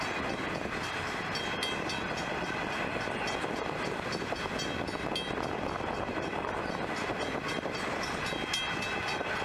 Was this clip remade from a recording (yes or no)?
no